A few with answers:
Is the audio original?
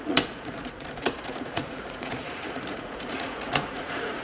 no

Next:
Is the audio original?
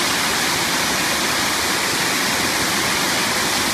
yes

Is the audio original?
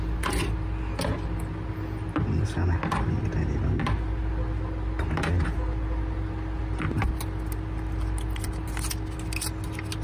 yes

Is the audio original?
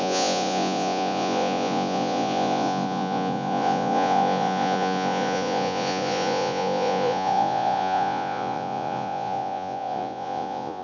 no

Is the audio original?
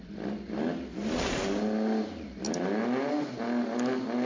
yes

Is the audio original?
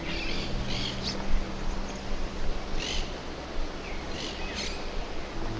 yes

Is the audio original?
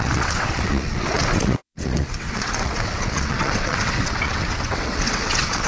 no